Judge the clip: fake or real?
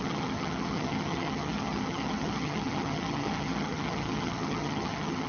fake